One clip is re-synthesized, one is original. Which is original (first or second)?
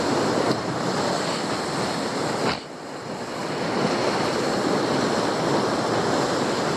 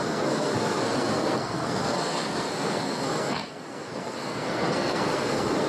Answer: first